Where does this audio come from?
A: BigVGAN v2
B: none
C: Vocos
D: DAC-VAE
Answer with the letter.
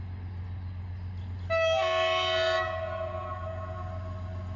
B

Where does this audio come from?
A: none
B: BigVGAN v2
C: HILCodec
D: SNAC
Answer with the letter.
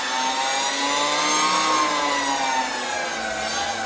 A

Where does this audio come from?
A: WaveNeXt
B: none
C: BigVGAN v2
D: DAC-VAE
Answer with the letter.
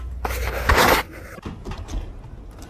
B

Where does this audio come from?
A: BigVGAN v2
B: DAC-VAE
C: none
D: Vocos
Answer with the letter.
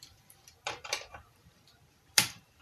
A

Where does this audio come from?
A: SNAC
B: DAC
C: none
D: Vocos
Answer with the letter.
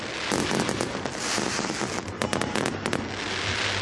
C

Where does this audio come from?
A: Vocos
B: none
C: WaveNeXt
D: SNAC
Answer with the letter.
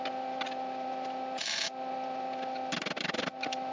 B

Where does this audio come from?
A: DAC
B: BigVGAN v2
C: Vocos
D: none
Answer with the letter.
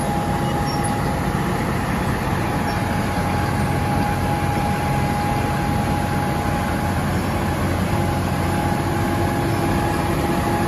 D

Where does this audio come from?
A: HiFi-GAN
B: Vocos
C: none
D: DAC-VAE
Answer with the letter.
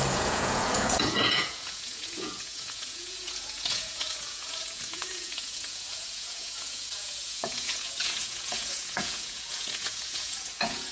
B